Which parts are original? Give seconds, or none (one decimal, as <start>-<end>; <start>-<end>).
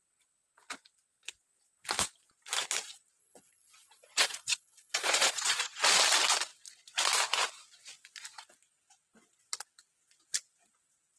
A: 0.0-3.2; 5.8-11.2